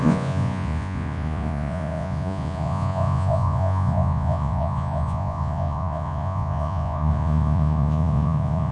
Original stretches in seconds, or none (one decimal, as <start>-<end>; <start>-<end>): none